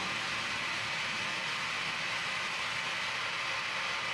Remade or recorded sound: recorded